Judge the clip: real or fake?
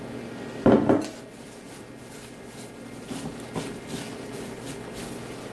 real